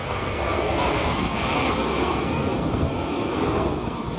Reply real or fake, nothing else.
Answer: fake